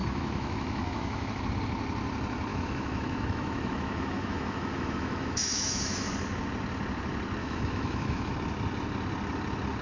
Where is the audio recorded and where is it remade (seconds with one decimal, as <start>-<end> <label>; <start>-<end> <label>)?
0.0-1.4 remade; 1.4-2.5 recorded; 2.5-6.1 remade; 6.1-7.4 recorded; 7.4-8.3 remade; 8.3-9.8 recorded